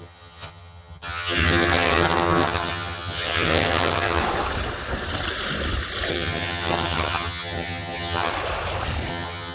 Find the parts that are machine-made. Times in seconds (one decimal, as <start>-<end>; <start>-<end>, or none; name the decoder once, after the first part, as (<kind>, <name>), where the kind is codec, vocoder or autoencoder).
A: 0.0-4.2 (vocoder, HiFi-GAN); 6.1-8.3; 9.1-9.5